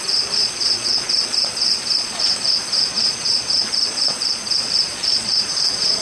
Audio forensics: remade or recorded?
remade